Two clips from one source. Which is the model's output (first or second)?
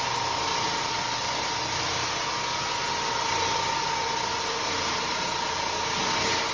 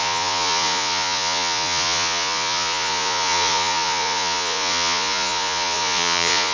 second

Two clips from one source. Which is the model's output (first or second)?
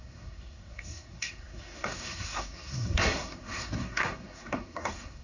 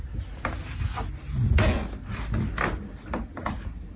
first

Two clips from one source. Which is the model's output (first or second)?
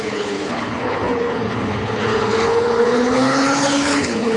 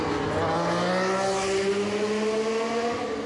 first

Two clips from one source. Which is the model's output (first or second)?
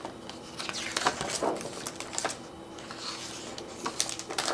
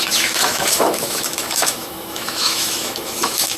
second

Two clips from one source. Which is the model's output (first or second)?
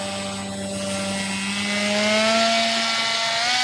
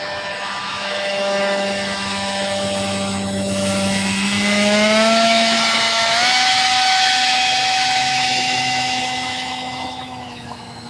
second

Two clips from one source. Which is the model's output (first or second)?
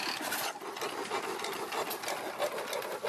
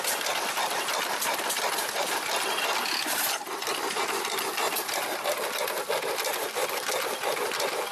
second